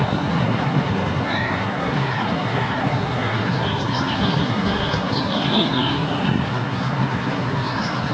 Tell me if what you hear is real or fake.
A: fake